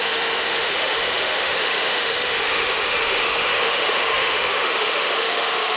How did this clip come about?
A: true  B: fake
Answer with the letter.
B